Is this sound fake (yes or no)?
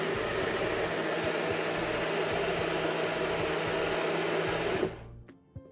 no